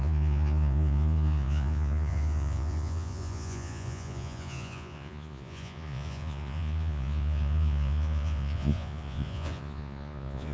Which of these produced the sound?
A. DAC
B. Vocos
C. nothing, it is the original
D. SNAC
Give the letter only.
B